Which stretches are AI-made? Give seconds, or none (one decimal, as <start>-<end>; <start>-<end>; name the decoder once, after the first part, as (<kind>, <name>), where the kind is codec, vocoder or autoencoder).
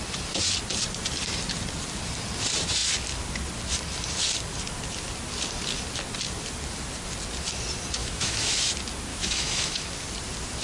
8.0-8.6 (autoencoder, DAC-VAE); 9.1-9.8